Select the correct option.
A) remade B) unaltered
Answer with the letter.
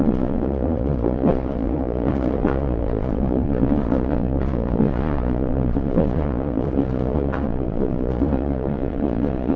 A